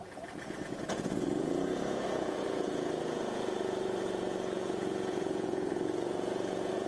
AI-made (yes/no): yes